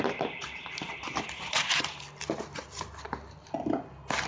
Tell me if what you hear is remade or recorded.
recorded